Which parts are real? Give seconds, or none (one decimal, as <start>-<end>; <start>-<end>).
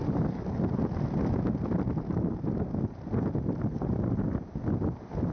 0.0-5.3